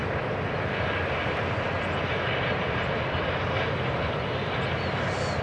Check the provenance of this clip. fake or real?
real